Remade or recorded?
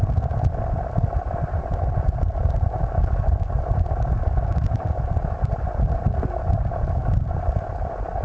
recorded